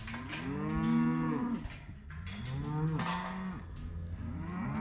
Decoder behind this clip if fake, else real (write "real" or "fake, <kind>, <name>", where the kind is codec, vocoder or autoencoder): real